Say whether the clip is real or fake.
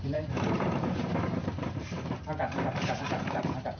fake